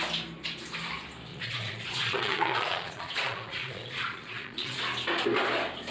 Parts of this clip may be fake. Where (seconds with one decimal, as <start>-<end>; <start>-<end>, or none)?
1.3-4.8